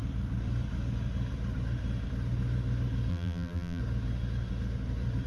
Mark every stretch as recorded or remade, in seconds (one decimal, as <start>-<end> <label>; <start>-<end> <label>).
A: 0.0-3.1 recorded; 3.1-3.8 remade; 3.8-5.3 recorded